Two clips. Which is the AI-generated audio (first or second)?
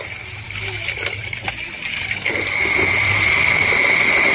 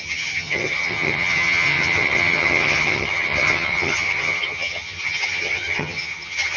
second